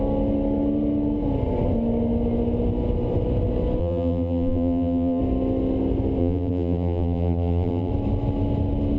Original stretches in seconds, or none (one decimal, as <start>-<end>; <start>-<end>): 0.0-3.8; 5.2-6.2; 7.9-9.0